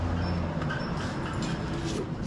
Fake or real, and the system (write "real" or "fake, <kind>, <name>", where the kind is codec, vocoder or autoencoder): real